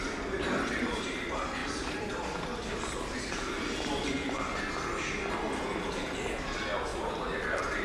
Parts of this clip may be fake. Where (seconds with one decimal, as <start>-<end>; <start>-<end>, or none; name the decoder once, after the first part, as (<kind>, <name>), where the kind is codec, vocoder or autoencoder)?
1.6-4.7 (vocoder, BigVGAN v2); 6.9-7.8